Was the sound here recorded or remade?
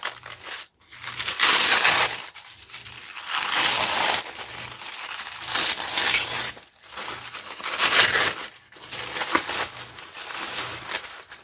recorded